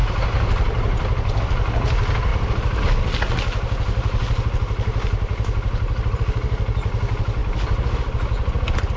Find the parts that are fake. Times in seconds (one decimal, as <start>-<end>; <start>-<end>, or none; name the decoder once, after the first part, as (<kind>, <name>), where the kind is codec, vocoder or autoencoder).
0.0-1.4 (vocoder, BigVGAN v2); 2.3-2.8